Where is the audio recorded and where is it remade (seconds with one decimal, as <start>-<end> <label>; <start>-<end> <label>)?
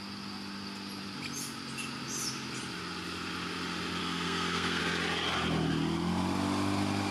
0.0-4.0 recorded; 4.0-4.8 remade; 4.8-7.1 recorded